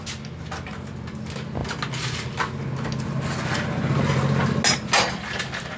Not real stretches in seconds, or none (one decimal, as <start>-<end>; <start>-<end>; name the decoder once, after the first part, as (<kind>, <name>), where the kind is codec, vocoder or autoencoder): none